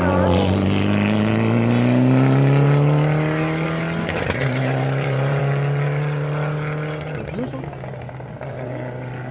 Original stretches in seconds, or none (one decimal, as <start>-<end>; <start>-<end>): 0.0-4.4; 5.4-9.3